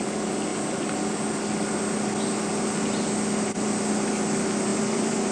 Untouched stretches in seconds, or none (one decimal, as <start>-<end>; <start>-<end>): 0.0-4.7